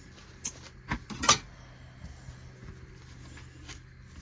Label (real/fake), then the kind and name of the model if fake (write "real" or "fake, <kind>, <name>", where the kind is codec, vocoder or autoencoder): real